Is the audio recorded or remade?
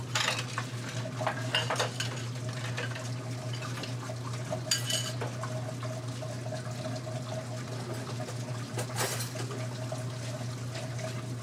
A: recorded